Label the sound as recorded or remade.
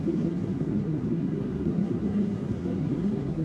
remade